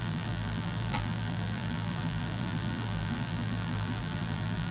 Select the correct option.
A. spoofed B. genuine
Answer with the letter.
A